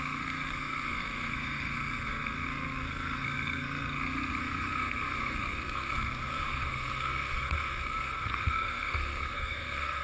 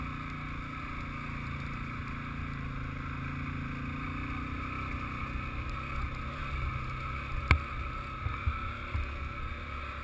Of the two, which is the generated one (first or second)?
first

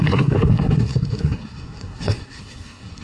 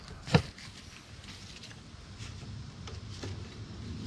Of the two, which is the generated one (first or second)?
first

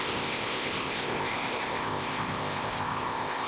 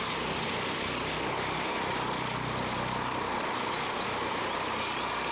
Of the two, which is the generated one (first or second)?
first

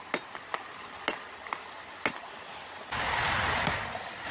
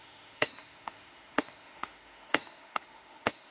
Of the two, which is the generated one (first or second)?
second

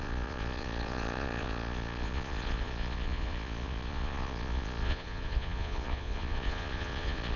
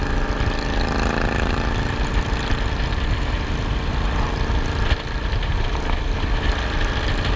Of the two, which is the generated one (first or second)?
first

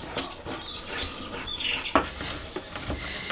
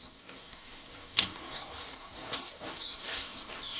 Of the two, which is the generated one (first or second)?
second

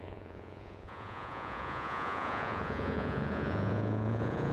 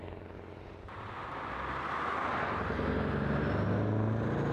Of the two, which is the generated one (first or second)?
first